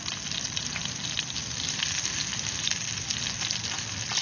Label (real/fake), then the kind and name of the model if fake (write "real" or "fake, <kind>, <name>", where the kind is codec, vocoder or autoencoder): real